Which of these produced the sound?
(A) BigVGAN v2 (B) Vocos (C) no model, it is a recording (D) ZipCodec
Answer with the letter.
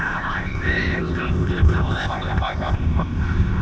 D